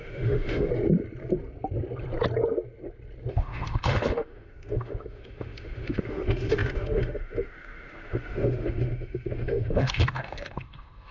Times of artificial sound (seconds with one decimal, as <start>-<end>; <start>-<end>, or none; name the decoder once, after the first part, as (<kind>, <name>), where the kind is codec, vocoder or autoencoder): 0.0-0.7 (autoencoder, DAC-VAE); 3.3-11.1